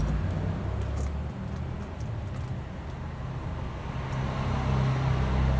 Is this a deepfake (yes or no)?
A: no